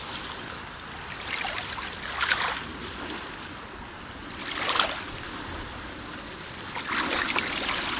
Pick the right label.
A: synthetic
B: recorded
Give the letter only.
B